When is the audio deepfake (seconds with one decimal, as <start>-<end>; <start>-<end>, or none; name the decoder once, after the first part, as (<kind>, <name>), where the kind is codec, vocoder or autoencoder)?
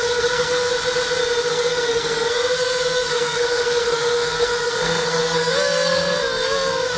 0.0-0.7 (codec, SNAC); 1.5-7.0